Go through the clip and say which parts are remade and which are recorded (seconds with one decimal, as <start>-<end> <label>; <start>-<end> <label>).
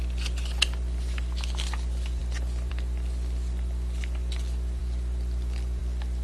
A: 0.0-6.2 recorded